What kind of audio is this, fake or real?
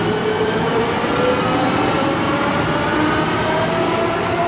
real